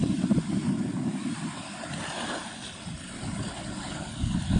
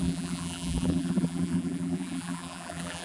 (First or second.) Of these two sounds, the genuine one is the first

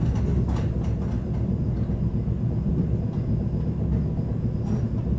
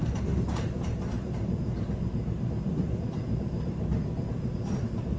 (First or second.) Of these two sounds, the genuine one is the first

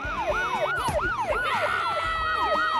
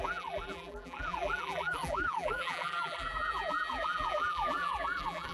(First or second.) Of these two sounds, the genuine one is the first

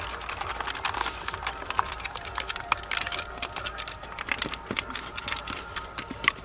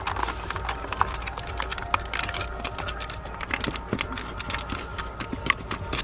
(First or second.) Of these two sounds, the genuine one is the second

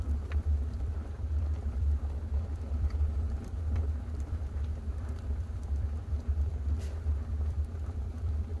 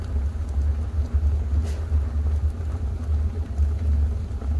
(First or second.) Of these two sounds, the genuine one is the second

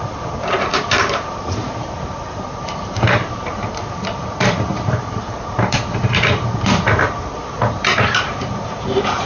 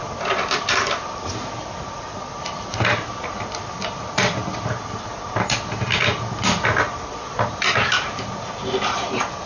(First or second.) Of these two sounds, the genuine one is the second